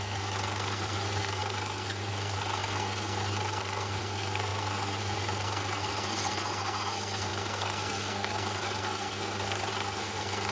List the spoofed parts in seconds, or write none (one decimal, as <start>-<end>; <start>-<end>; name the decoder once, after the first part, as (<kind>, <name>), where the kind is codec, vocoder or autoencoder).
0.0-10.5 (codec, SNAC)